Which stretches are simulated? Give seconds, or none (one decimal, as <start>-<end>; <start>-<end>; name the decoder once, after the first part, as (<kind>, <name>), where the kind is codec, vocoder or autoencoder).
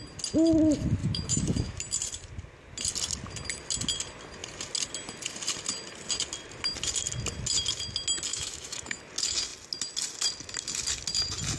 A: 1.0-1.8 (autoencoder, DAC-VAE); 8.3-9.0